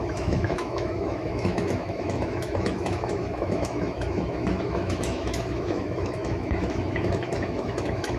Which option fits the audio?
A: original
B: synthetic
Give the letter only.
B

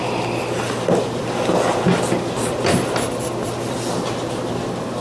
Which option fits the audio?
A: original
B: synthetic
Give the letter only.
A